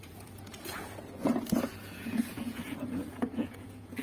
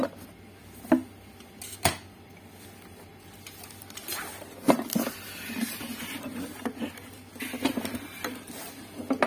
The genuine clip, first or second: second